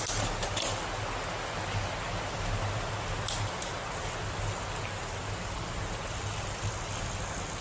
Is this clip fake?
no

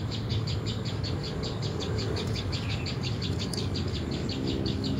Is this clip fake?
yes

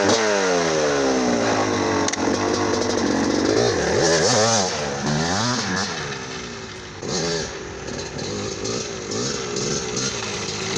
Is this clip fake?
no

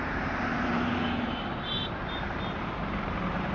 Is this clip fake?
yes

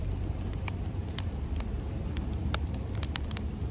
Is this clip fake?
yes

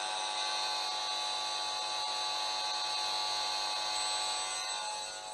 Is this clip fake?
no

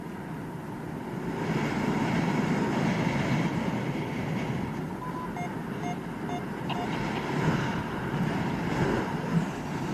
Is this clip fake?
no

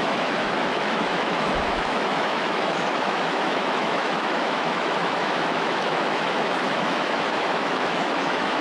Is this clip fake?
yes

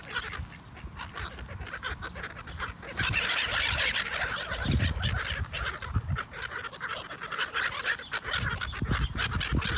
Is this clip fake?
no